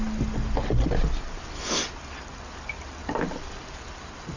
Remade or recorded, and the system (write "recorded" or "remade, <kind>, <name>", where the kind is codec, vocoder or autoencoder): recorded